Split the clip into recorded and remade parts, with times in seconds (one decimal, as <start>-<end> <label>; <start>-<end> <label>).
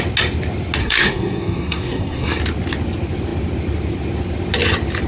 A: 0.0-0.8 recorded; 0.8-2.4 remade; 2.4-5.1 recorded